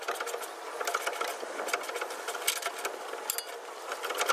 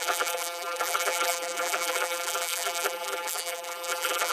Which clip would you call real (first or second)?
first